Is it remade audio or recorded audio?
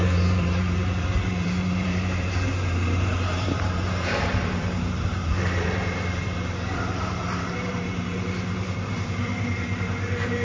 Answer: remade